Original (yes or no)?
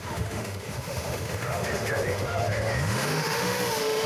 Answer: no